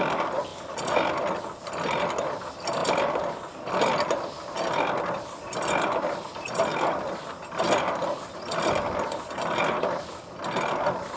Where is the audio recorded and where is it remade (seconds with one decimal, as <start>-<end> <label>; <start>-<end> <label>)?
0.0-11.2 recorded